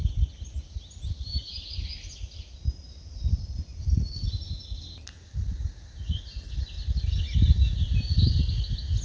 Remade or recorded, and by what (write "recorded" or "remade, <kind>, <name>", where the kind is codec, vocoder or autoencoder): recorded